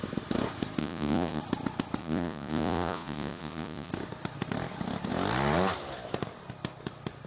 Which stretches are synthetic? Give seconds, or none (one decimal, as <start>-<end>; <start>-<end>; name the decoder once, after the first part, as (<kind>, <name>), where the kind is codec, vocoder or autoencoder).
0.8-1.4 (vocoder, Vocos); 2.0-3.9